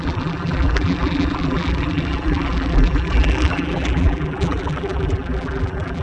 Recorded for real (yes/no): no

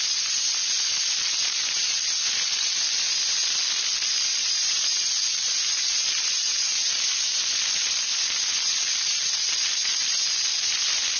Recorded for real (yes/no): yes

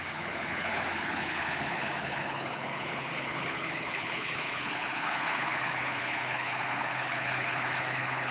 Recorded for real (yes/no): no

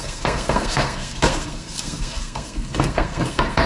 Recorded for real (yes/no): no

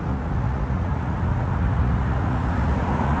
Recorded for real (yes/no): no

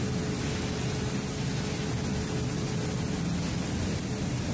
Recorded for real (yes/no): yes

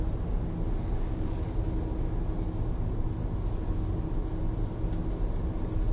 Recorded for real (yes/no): yes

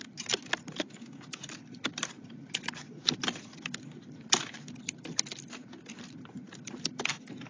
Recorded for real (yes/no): yes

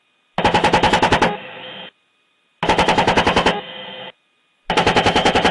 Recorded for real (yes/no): yes